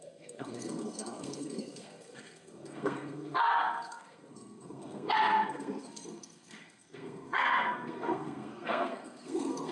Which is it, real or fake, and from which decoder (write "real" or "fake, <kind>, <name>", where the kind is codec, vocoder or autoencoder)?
fake, codec, SNAC